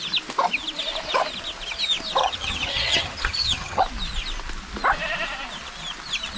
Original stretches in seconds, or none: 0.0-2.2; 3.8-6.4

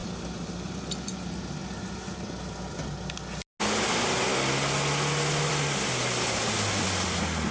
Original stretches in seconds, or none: 0.0-7.5

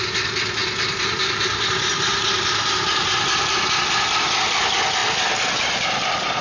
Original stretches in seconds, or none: 0.0-6.4

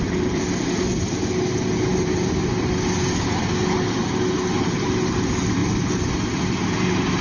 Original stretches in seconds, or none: 0.0-7.2

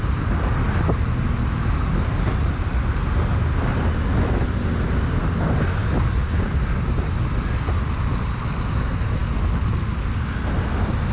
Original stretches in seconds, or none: 0.0-11.1

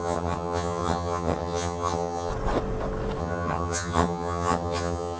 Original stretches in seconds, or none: 2.3-3.2